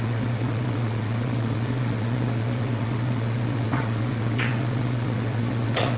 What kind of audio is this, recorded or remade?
remade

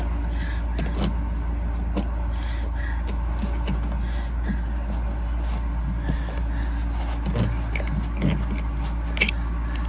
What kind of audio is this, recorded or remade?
recorded